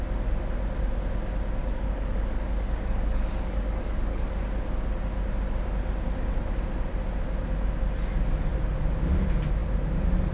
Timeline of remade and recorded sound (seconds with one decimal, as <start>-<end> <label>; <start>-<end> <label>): 0.0-1.6 recorded; 1.6-4.2 remade; 4.2-10.3 recorded